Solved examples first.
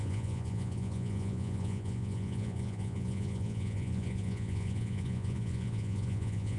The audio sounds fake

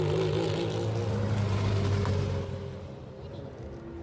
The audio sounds real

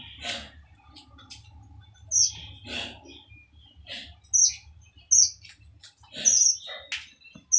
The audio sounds real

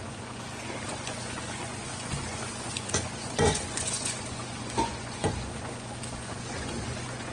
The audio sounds fake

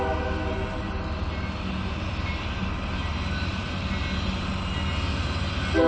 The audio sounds real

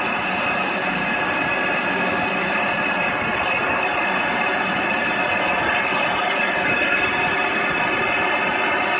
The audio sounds real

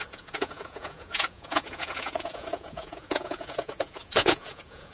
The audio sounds fake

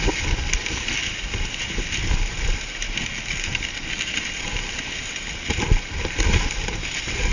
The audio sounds real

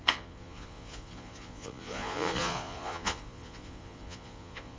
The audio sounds fake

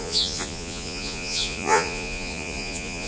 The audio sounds fake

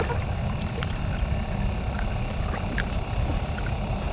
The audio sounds real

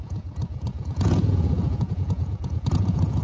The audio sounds fake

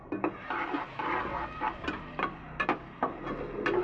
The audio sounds real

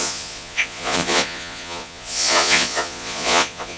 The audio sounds fake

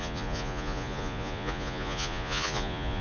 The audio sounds fake